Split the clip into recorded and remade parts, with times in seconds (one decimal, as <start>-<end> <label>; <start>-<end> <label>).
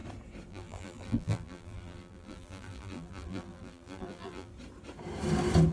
0.0-0.5 recorded; 0.5-4.5 remade; 4.5-5.7 recorded